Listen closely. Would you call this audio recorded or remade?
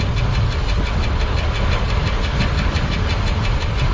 recorded